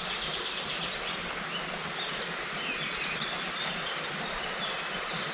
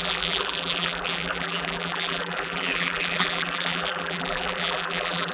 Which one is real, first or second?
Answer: first